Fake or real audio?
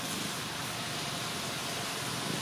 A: fake